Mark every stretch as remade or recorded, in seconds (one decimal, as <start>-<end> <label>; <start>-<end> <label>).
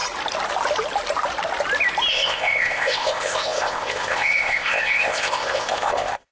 0.0-2.1 recorded; 2.1-6.3 remade